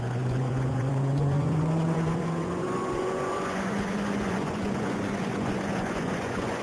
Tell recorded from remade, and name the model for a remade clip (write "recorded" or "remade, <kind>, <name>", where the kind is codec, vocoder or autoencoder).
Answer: remade, vocoder, Vocos